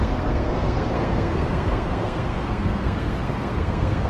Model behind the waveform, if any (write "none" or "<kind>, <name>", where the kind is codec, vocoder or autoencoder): codec, SNAC